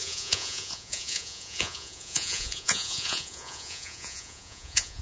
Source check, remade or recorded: remade